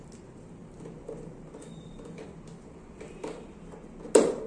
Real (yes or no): yes